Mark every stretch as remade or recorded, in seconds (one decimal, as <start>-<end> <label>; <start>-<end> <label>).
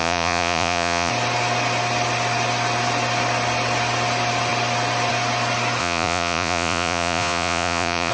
0.0-1.1 remade; 1.1-5.8 recorded; 5.8-8.1 remade